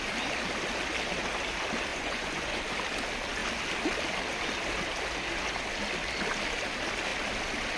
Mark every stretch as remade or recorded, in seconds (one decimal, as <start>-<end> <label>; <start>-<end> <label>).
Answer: 0.0-1.9 recorded; 1.9-2.6 remade; 2.6-7.8 recorded